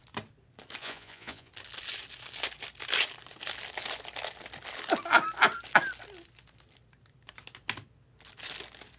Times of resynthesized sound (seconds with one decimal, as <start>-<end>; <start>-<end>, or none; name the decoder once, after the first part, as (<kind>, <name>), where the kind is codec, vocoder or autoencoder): 0.8-1.5 (vocoder, Vocos)

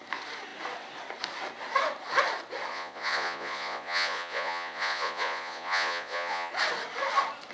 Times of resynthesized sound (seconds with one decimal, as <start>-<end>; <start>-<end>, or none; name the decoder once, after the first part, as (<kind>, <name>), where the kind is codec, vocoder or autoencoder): 2.7-6.5 (vocoder, Vocos)